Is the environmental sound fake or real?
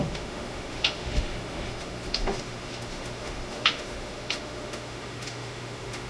fake